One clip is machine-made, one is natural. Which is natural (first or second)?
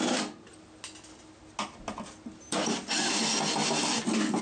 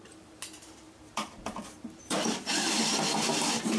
first